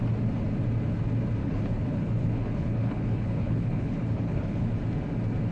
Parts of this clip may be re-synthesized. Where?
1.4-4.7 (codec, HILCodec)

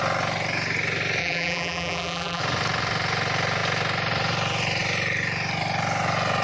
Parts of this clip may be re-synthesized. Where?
1.2-2.4 (vocoder, BigVGAN v2)

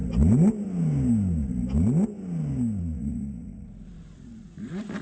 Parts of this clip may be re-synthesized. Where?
2.8-5.0 (vocoder, Vocos)

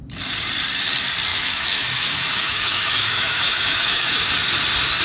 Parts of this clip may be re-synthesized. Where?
1.3-4.3 (autoencoder, DAC-VAE)

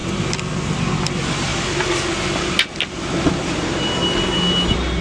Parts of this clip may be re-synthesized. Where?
none